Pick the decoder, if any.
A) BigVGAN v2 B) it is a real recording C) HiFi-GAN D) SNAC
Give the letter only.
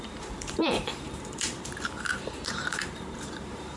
A